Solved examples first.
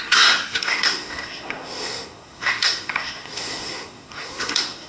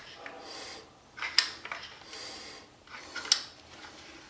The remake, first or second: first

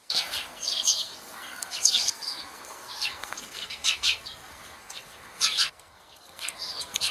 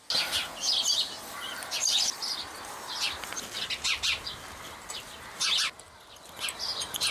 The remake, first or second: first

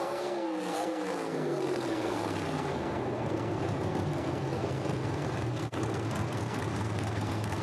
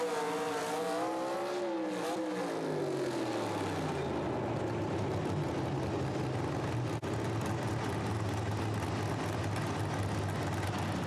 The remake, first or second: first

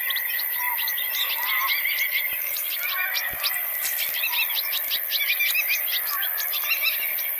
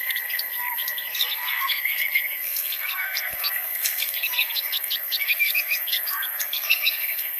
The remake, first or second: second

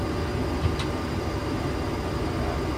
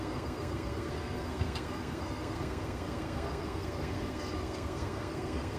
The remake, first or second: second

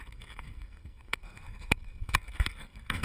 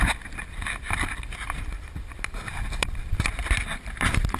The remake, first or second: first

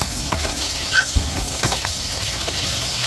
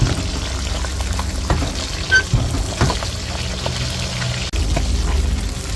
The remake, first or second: first